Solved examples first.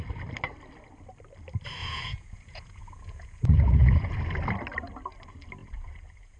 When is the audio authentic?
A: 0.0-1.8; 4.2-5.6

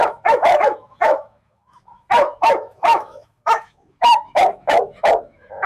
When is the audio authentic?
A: none

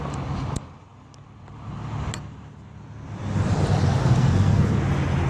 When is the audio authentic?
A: 0.0-4.0; 4.8-5.3

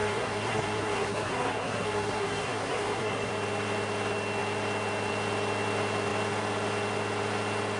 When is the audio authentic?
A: 3.3-7.8

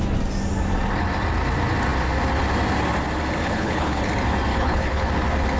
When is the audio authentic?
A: 0.0-3.4; 4.1-4.5; 5.1-5.6

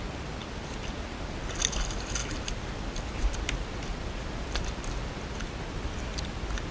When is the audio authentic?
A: 0.0-6.7

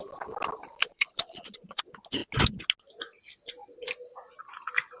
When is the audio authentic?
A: 0.0-0.8; 1.8-5.0